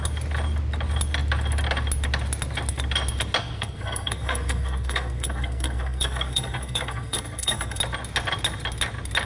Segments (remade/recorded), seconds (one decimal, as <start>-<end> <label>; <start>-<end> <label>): 0.0-3.4 recorded; 3.4-7.8 remade; 7.8-9.3 recorded